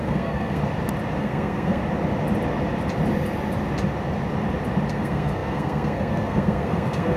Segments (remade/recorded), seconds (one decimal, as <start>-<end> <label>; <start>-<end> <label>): 0.0-0.6 remade; 0.6-1.2 recorded; 1.2-1.8 remade; 1.8-4.9 recorded; 4.9-7.2 remade